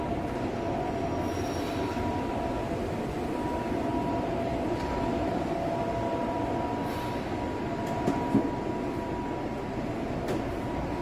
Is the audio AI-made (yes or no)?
no